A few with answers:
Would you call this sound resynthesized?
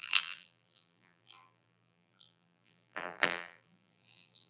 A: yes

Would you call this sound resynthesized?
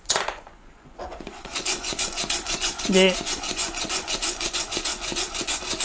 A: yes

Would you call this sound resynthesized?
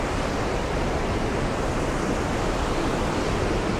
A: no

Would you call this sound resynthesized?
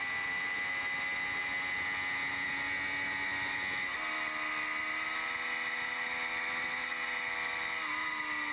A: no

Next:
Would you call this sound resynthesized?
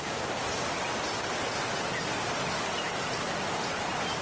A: no